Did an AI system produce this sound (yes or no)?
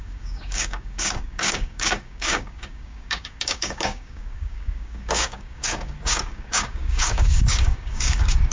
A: yes